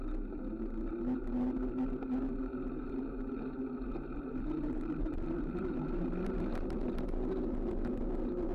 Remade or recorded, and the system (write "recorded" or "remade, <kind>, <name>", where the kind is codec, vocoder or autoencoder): recorded